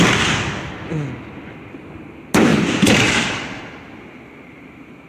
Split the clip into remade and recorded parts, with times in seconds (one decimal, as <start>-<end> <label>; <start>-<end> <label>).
0.0-2.5 recorded; 2.5-3.6 remade; 3.6-5.1 recorded